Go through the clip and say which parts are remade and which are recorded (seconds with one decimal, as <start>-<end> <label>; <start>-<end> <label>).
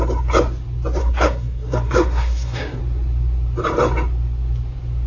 0.0-1.0 recorded; 1.0-2.8 remade; 2.8-5.1 recorded